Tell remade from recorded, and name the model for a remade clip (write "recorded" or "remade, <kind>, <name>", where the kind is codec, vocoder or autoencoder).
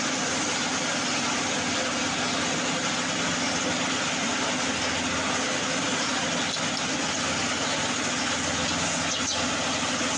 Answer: recorded